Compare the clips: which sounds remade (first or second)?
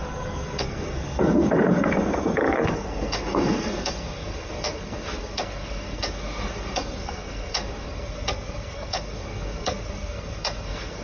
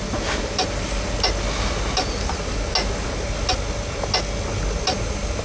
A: first